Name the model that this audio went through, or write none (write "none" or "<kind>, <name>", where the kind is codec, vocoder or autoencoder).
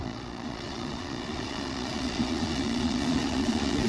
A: vocoder, Vocos